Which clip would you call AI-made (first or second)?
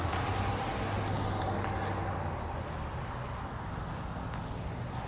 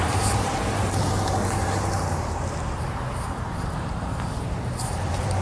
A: second